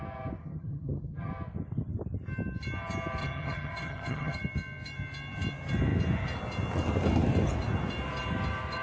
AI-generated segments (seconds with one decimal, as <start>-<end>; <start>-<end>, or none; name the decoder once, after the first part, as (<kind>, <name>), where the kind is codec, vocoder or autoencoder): 0.4-1.3 (vocoder, HiFi-GAN); 3.2-4.4